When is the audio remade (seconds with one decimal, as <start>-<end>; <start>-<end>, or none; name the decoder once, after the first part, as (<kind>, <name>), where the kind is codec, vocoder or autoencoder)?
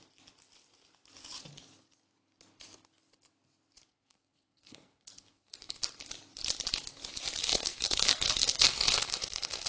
3.9-6.0 (codec, SNAC); 7.4-9.7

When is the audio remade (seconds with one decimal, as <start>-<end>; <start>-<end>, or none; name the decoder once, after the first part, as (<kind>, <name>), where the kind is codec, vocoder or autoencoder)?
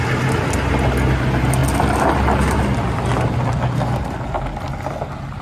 none